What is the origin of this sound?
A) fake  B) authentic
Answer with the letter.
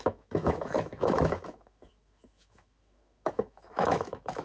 A